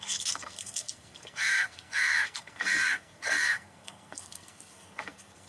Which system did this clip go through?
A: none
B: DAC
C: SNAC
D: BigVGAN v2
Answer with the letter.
C